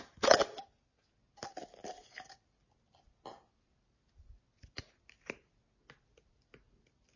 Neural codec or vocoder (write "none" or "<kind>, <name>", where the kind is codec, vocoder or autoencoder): none